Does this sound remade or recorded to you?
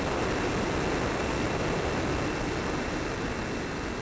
recorded